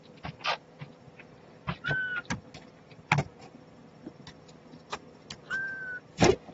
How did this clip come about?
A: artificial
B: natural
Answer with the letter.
B